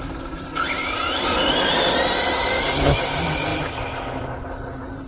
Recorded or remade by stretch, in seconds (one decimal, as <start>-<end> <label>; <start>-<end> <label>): 0.0-5.1 recorded